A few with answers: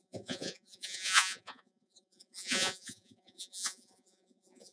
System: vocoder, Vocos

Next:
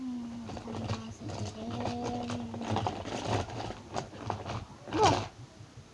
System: none